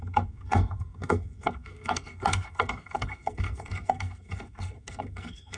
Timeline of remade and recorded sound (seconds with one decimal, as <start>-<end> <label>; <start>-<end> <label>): 0.0-5.6 remade